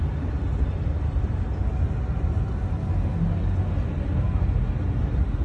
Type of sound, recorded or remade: recorded